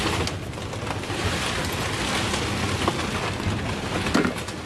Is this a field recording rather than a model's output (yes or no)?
yes